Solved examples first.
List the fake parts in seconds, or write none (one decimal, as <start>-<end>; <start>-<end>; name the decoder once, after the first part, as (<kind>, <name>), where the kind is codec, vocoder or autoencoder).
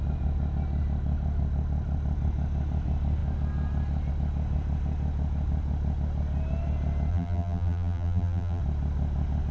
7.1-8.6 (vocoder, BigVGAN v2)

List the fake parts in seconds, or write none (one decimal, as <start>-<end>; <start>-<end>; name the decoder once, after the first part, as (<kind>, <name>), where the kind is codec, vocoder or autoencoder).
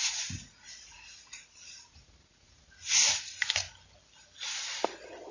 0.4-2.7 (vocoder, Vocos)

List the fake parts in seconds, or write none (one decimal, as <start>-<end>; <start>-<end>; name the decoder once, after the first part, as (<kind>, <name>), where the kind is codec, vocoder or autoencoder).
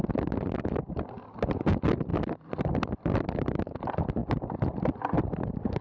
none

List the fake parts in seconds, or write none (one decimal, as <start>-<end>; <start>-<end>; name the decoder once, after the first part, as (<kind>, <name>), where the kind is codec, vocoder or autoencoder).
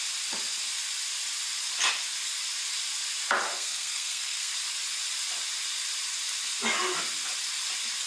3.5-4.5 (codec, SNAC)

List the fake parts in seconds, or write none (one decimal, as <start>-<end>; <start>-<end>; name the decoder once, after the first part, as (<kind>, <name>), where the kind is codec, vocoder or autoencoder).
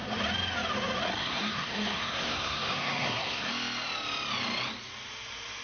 1.2-3.5 (codec, SNAC)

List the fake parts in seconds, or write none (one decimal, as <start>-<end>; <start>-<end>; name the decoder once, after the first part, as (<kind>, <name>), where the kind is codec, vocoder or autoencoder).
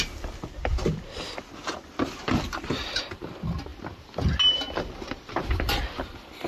none